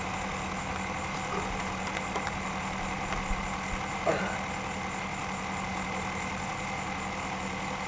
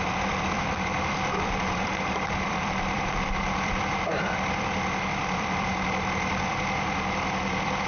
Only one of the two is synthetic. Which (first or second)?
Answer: second